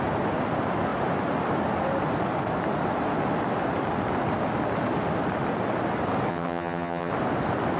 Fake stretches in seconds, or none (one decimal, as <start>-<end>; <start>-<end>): 6.3-7.1